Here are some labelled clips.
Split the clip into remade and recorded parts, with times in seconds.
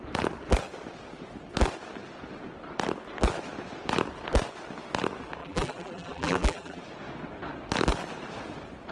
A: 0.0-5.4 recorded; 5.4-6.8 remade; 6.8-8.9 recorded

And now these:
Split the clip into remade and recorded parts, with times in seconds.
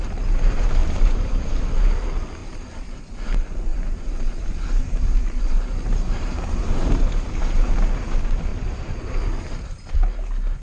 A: 0.0-0.8 recorded; 0.8-1.6 remade; 1.6-2.4 recorded; 2.4-3.0 remade; 3.0-3.7 recorded; 3.7-7.7 remade; 7.7-8.5 recorded; 8.5-9.8 remade; 9.8-10.6 recorded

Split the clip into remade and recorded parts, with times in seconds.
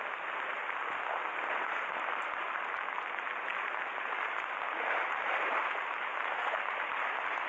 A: 0.0-3.5 recorded; 3.5-6.9 remade; 6.9-7.5 recorded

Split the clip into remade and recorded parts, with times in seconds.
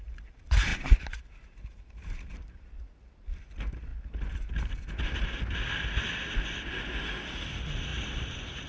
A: 0.0-0.7 recorded; 0.7-2.7 remade; 2.7-7.9 recorded; 7.9-8.7 remade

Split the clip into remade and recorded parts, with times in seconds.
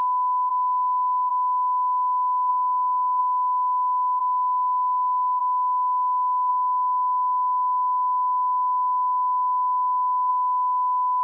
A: 0.0-11.2 recorded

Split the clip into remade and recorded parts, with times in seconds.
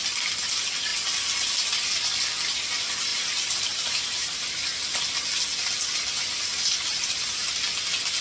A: 0.0-3.1 recorded; 3.1-4.4 remade; 4.4-6.5 recorded; 6.5-7.5 remade; 7.5-8.2 recorded